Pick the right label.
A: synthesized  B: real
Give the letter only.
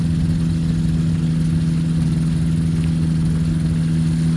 B